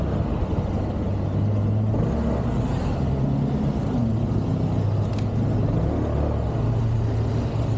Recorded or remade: recorded